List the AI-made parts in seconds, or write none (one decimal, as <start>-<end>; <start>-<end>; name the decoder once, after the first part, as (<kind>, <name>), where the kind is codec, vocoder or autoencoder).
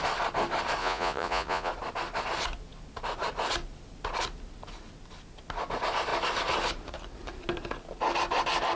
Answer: 0.8-1.7 (vocoder, Vocos)